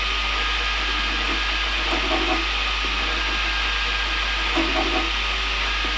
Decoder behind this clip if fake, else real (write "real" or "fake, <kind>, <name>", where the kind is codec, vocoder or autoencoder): real